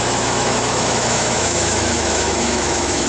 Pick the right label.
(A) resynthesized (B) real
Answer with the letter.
A